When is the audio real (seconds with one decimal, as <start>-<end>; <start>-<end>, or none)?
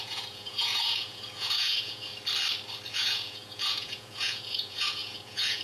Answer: 2.1-2.9